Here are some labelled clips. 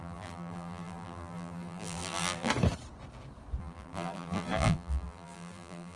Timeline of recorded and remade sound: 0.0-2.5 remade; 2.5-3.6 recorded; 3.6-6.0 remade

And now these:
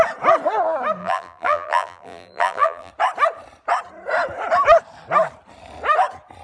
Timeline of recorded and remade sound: 0.0-1.0 recorded; 1.0-2.9 remade; 2.9-6.4 recorded

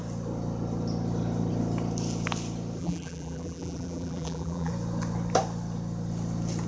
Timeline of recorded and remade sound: 0.0-2.8 recorded; 2.8-4.7 remade; 4.7-6.7 recorded